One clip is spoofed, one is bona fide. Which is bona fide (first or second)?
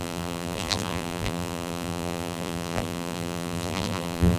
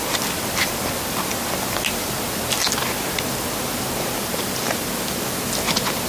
second